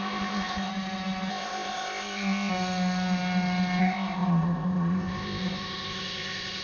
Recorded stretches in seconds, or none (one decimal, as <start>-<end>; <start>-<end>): 0.7-1.3; 2.5-3.8